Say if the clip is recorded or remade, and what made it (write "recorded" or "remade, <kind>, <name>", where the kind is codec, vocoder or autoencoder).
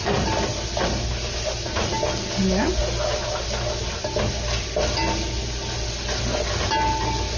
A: recorded